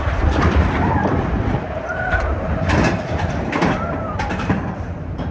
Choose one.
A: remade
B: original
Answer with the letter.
A